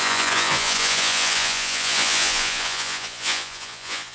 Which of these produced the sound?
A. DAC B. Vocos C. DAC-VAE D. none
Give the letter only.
B